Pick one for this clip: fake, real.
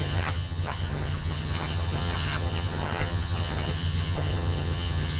fake